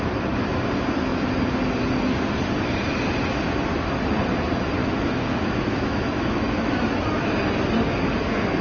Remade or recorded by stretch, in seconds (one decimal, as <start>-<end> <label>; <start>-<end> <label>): 0.0-4.8 recorded; 4.8-7.4 remade; 7.4-8.6 recorded